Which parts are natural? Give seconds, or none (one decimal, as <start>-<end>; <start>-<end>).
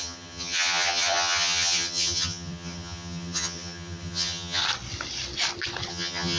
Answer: 4.6-5.9